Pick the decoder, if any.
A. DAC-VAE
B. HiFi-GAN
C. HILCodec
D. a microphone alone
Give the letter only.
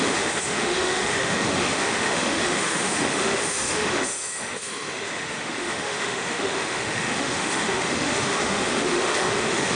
A